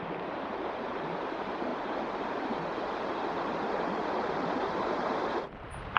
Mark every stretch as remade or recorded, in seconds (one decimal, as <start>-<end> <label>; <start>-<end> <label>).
0.0-1.7 remade; 1.7-2.2 recorded; 2.2-4.0 remade; 4.0-4.6 recorded; 4.6-6.0 remade